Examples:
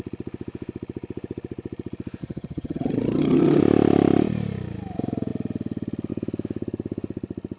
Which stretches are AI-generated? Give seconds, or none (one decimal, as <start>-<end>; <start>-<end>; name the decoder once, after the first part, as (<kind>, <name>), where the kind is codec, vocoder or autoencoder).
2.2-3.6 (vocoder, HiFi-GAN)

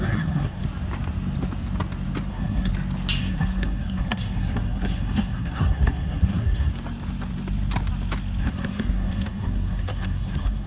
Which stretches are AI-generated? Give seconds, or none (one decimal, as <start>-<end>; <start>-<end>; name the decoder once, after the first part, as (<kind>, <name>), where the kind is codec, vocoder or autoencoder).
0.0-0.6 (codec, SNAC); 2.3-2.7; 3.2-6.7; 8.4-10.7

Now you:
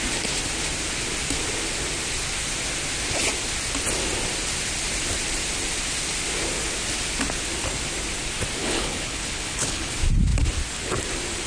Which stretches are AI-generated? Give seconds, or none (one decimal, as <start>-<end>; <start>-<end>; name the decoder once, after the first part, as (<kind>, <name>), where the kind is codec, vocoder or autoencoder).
8.6-9.9 (codec, HILCodec)

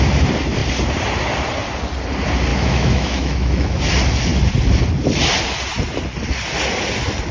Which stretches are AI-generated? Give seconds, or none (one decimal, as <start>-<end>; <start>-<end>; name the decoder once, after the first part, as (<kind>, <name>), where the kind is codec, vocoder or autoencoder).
2.5-3.8 (autoencoder, DAC-VAE)

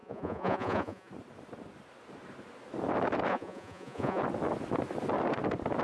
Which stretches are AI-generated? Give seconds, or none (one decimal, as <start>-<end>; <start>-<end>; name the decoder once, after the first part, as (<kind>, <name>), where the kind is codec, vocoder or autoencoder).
0.0-1.1 (vocoder, Vocos); 3.3-4.2